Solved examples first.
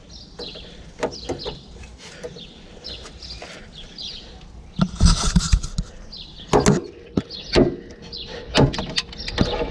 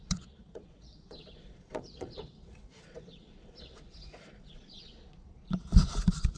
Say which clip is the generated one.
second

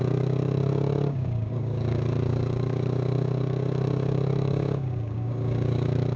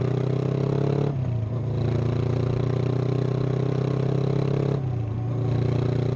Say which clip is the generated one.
first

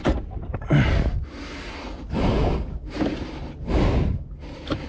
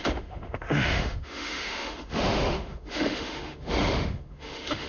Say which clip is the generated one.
second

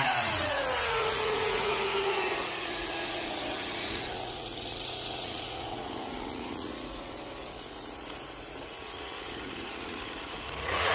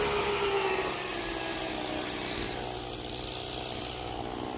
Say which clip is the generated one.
first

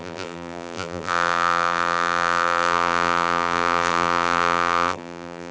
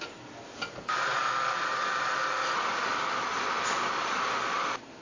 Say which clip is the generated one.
first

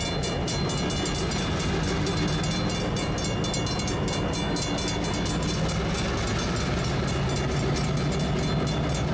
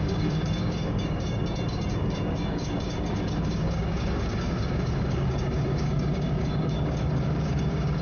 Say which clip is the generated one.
second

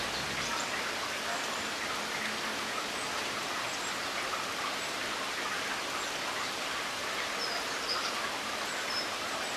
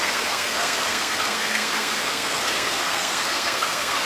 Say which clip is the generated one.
second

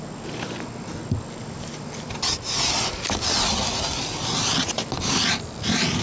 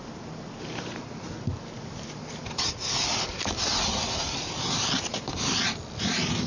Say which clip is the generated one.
second